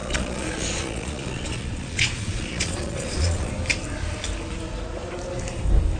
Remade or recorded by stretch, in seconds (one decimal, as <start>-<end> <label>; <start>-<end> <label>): 0.0-3.5 remade; 3.5-6.0 recorded